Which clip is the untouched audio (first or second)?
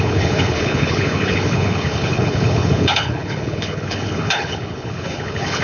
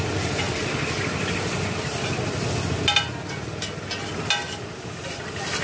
second